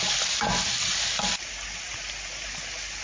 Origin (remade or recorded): recorded